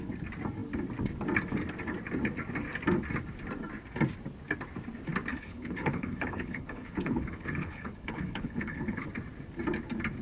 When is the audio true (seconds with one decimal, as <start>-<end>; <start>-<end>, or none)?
0.0-5.3; 9.1-10.2

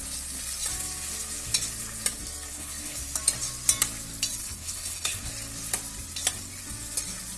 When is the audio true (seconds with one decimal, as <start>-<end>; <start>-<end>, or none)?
0.0-2.5; 3.0-4.4; 5.3-7.4

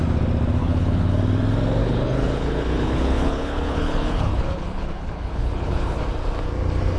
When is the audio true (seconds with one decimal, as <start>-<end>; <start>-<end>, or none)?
0.0-0.6; 1.1-1.8; 6.0-7.0